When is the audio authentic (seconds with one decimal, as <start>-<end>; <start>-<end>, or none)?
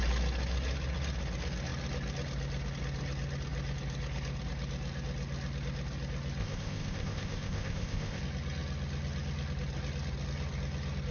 0.0-6.4; 8.2-11.1